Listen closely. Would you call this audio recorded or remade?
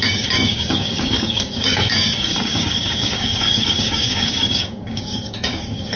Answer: remade